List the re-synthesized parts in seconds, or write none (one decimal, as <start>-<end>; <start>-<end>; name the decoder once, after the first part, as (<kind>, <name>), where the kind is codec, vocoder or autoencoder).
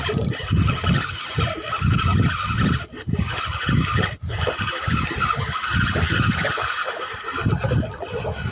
none